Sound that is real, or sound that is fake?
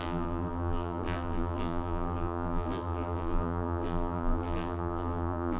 fake